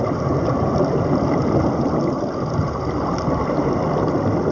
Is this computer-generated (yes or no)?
no